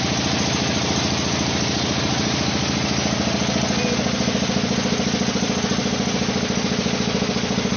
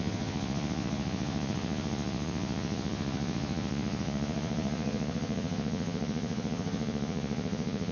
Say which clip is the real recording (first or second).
first